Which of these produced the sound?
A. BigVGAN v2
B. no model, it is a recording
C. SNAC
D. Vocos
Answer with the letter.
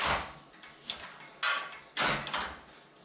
B